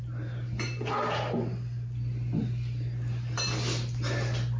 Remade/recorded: recorded